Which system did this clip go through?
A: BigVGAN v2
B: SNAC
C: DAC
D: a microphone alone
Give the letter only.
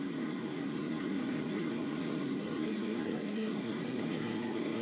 B